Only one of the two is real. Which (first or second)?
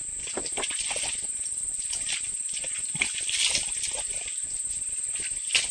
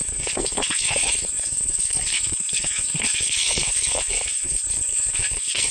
first